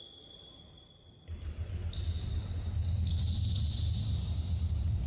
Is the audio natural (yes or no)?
yes